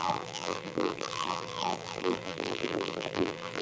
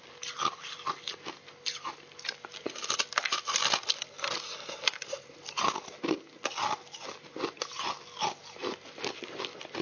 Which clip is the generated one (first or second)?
first